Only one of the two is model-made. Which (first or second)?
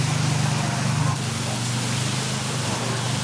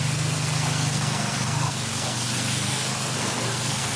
second